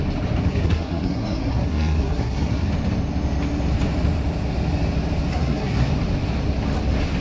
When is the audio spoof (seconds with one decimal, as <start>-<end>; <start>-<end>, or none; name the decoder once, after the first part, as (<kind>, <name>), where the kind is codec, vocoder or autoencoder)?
0.4-2.7 (codec, SNAC); 5.3-5.9